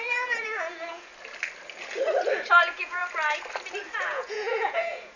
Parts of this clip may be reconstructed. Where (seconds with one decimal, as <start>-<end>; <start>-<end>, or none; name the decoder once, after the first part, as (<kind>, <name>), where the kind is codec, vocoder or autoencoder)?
0.0-1.1 (vocoder, Vocos); 2.5-3.0; 4.0-5.2